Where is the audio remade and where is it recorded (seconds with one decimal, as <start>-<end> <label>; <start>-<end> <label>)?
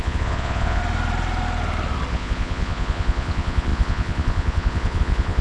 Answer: 0.0-0.8 remade; 0.8-2.1 recorded; 2.1-5.4 remade